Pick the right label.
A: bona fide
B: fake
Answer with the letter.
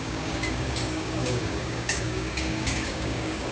B